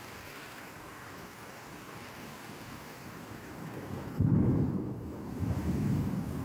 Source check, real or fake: fake